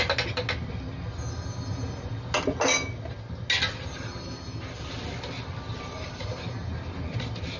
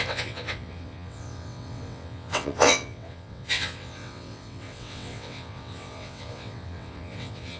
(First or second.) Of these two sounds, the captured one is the first